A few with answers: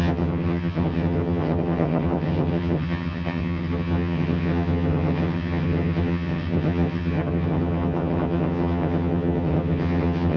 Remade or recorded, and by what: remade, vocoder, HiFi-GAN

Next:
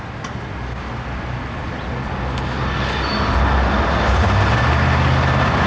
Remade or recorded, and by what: recorded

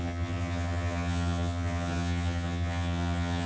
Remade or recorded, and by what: remade, vocoder, HiFi-GAN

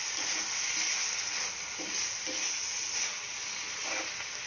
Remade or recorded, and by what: recorded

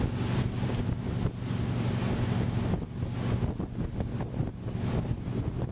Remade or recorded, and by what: recorded